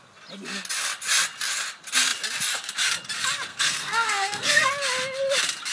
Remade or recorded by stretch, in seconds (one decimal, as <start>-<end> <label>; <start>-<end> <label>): 0.0-3.5 recorded; 3.5-4.7 remade; 4.7-5.7 recorded